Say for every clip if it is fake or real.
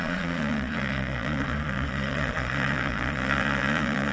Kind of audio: fake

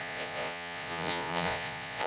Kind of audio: fake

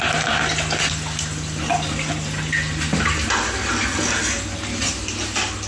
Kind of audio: real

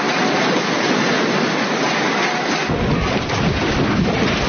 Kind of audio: real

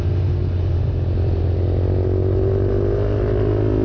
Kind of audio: real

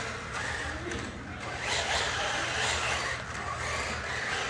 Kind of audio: real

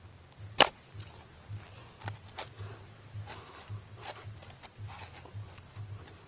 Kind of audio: real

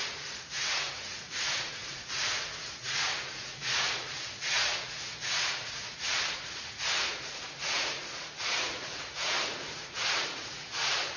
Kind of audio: fake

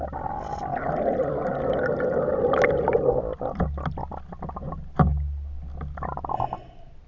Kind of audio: real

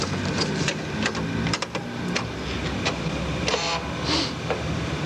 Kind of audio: real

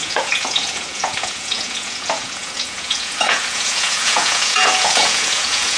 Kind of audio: fake